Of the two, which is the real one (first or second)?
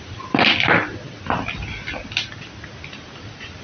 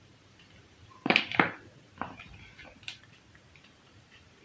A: first